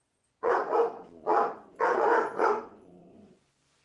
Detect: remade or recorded remade